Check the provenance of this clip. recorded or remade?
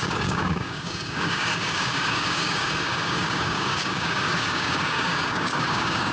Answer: remade